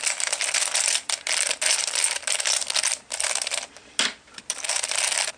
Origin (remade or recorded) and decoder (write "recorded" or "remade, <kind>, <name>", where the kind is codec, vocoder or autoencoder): recorded